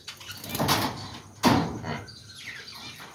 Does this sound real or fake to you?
real